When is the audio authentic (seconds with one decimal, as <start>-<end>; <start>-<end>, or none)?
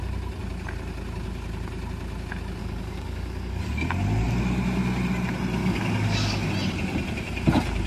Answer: 0.0-2.6; 3.6-5.6; 6.5-7.9